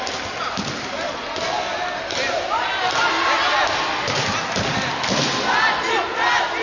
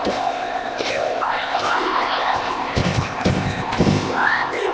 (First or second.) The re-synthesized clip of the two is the second